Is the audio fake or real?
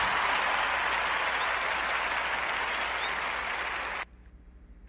real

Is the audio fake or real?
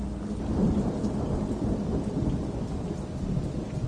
real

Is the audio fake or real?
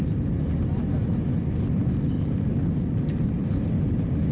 real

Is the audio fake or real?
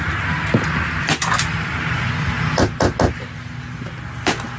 real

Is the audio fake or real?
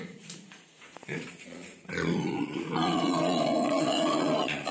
fake